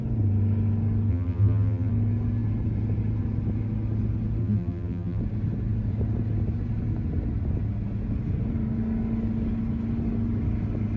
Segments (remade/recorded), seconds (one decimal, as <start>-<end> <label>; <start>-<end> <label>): 0.0-1.1 recorded; 1.1-1.9 remade; 1.9-4.4 recorded; 4.4-5.2 remade; 5.2-11.0 recorded